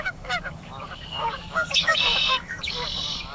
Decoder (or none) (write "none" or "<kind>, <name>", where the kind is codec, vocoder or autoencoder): codec, DAC